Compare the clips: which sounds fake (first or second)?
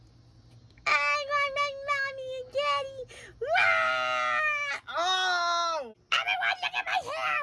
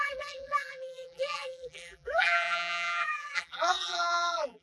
second